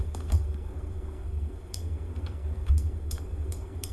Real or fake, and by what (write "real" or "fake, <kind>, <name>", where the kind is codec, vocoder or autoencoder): fake, codec, SNAC